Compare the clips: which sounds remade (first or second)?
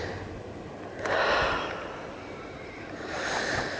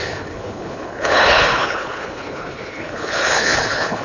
second